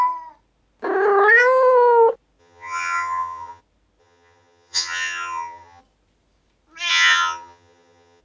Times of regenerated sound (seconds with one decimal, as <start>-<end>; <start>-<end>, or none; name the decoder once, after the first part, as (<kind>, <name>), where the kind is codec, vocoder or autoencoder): 2.4-3.6 (vocoder, HiFi-GAN); 4.0-5.8; 6.9-8.2